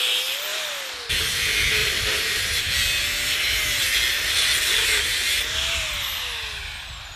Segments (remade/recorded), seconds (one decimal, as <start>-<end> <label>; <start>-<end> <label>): 0.0-1.8 recorded; 1.8-2.6 remade; 2.6-7.2 recorded